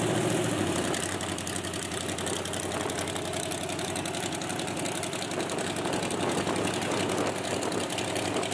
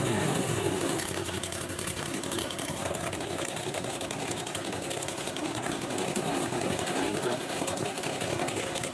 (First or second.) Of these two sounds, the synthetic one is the second